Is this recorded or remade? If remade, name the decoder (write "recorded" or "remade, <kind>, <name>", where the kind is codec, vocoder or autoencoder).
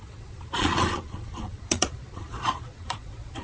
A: remade, vocoder, Vocos